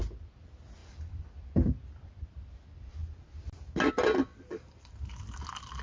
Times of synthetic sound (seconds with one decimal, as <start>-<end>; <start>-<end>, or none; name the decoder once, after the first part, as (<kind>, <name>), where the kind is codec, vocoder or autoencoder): 0.8-1.5 (vocoder, BigVGAN v2); 4.3-4.9